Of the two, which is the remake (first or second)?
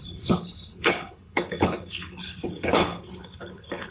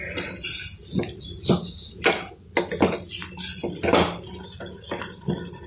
first